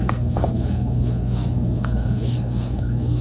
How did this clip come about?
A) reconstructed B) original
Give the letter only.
A